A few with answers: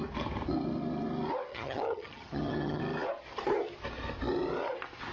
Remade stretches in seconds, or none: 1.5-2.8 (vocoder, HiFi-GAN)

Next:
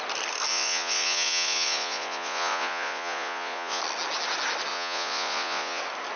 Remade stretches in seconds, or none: 0.5-3.8 (vocoder, Vocos); 4.7-5.8

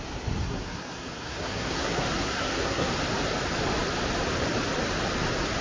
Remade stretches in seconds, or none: 0.4-2.9 (codec, SNAC)

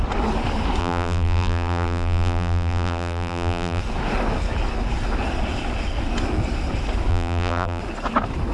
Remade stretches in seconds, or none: 0.8-3.8 (vocoder, BigVGAN v2); 7.1-7.8

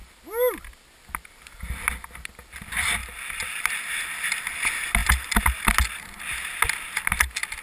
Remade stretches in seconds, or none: 3.0-3.7 (vocoder, BigVGAN v2); 5.0-5.6

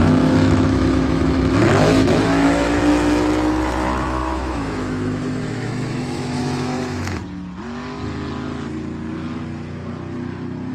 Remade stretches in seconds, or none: 0.0-7.2 (autoencoder, DAC-VAE)